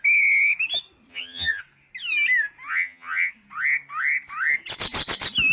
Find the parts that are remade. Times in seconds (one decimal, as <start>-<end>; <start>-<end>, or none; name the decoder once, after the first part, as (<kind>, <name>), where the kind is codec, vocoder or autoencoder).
1.1-1.6 (vocoder, HiFi-GAN); 2.7-3.3